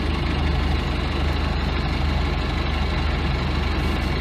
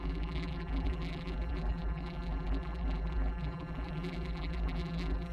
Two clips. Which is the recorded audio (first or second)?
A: first